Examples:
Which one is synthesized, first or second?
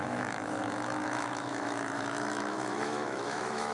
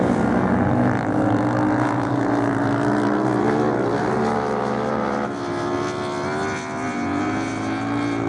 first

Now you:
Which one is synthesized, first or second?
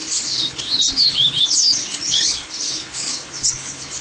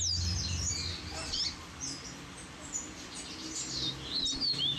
first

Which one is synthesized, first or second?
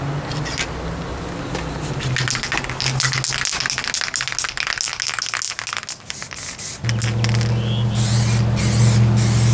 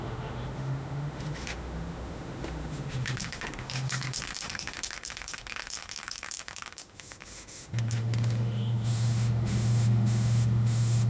second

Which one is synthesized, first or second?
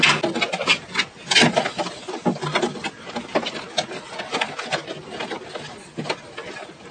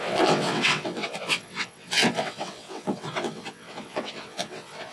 second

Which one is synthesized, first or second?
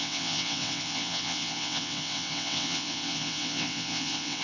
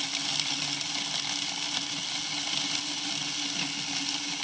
first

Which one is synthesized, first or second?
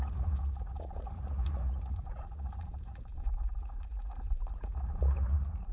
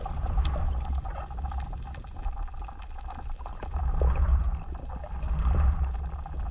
first